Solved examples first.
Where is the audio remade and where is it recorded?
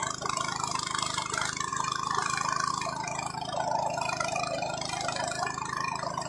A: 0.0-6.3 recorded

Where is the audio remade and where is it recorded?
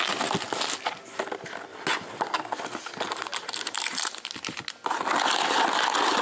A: 0.0-6.2 recorded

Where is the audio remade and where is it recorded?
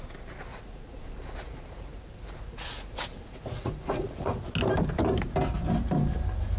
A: 0.0-0.5 recorded; 0.5-4.5 remade; 4.5-6.6 recorded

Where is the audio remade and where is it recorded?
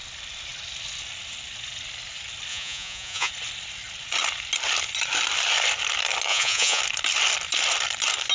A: 0.0-2.5 recorded; 2.5-3.3 remade; 3.3-6.3 recorded; 6.3-6.8 remade; 6.8-8.3 recorded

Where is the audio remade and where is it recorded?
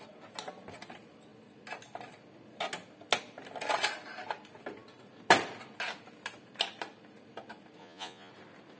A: 0.0-7.8 recorded; 7.8-8.3 remade; 8.3-8.8 recorded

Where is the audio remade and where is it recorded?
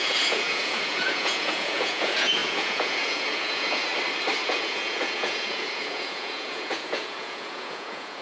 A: 0.0-3.9 remade; 3.9-4.4 recorded; 4.4-8.2 remade